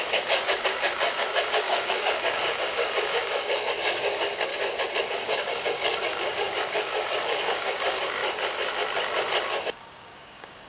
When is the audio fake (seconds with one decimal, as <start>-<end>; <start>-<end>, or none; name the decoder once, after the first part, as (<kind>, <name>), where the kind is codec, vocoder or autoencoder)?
0.0-4.5 (codec, DAC); 5.1-8.2; 9.6-10.7